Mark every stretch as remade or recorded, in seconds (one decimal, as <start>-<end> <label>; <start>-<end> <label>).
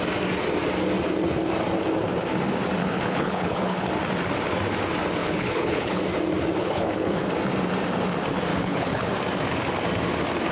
0.0-2.8 recorded; 2.8-3.9 remade; 3.9-5.2 recorded; 5.2-6.0 remade; 6.0-6.6 recorded; 6.6-7.3 remade; 7.3-8.5 recorded; 8.5-9.1 remade; 9.1-10.5 recorded